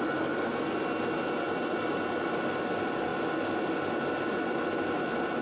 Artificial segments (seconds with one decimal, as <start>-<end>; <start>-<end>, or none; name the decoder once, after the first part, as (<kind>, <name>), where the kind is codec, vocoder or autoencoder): none